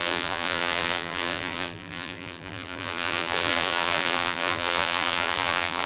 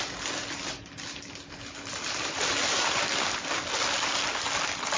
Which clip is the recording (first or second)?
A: second